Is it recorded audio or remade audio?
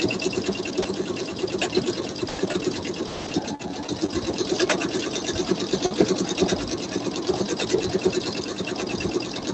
recorded